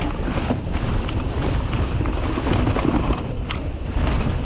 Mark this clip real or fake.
fake